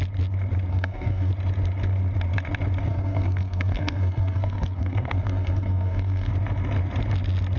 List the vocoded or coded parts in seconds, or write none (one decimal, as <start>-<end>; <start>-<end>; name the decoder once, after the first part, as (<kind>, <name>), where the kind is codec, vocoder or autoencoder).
0.7-1.3 (codec, SNAC); 2.9-6.3